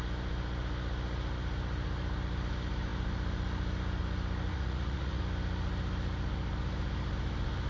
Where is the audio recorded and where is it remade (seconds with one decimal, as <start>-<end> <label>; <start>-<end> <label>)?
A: 0.0-4.5 recorded; 4.5-5.2 remade; 5.2-7.7 recorded

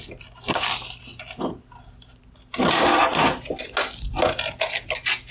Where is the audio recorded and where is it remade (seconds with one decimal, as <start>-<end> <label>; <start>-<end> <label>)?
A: 0.0-5.3 recorded

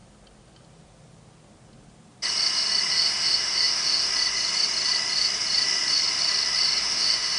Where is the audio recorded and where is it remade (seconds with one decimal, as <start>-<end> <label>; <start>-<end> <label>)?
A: 0.0-2.9 recorded; 2.9-4.1 remade; 4.1-6.8 recorded; 6.8-7.4 remade

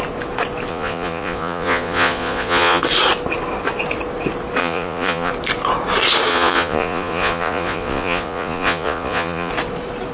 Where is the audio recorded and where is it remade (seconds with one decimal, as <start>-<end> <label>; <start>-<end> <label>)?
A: 0.0-0.7 recorded; 0.7-2.8 remade; 2.8-4.6 recorded; 4.6-5.3 remade; 5.3-6.3 recorded; 6.3-9.5 remade; 9.5-10.1 recorded